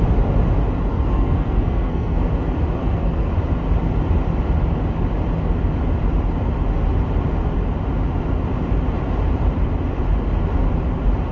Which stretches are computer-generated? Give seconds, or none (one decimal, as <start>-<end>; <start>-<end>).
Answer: 0.9-2.3; 2.8-3.3